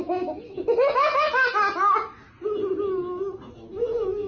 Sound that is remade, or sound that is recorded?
recorded